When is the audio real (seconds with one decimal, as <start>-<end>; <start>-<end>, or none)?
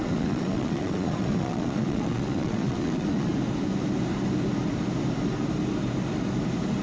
3.3-6.8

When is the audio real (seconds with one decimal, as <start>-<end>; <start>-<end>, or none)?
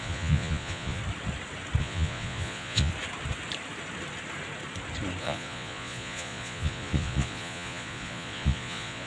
1.0-1.8; 2.9-5.2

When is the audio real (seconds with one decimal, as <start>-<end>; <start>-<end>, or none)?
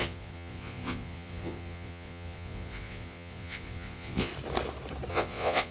4.3-5.1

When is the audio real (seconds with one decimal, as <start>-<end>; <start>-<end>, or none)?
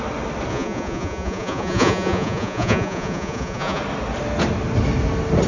0.0-0.5; 3.8-5.5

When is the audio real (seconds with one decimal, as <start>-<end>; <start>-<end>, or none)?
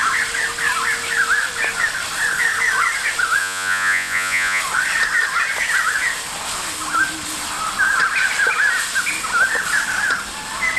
0.0-3.4; 4.6-10.8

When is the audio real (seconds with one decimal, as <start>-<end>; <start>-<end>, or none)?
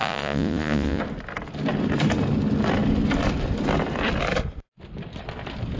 1.0-5.8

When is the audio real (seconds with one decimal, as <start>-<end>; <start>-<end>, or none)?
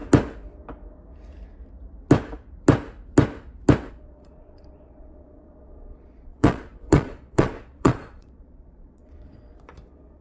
0.0-3.9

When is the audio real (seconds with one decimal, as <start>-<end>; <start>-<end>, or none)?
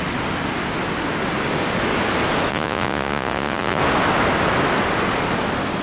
0.0-2.5; 3.8-5.8